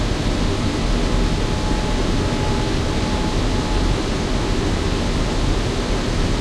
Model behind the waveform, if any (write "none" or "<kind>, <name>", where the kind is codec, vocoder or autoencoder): none